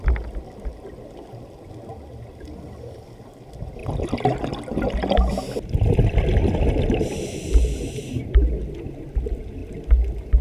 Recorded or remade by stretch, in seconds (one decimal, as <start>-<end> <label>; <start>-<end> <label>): 0.0-10.4 recorded